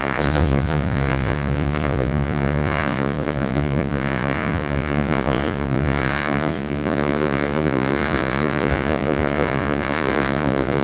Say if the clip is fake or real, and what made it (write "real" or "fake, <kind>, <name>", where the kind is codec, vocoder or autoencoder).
fake, vocoder, Vocos